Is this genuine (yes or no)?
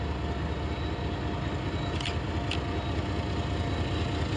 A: yes